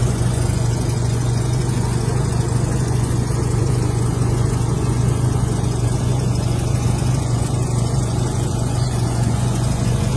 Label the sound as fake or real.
fake